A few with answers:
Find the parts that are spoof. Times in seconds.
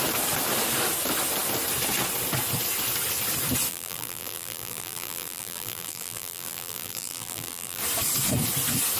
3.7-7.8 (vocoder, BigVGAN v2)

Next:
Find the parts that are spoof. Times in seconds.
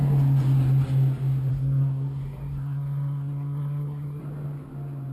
1.5-4.2 (codec, SNAC)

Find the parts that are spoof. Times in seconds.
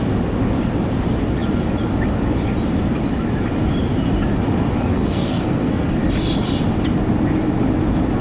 4.9-5.9 (codec, SNAC)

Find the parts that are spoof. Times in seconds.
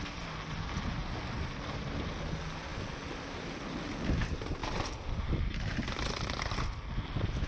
1.0-2.2 (vocoder, BigVGAN v2); 2.7-3.9; 4.6-7.5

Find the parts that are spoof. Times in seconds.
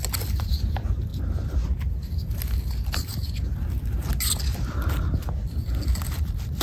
none